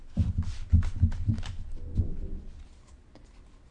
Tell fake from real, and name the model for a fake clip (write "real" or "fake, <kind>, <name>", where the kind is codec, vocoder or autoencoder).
real